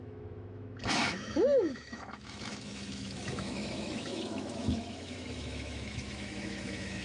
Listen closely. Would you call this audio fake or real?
fake